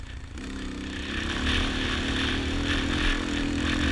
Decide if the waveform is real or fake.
real